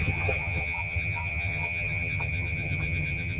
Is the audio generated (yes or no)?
yes